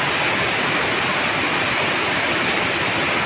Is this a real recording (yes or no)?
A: yes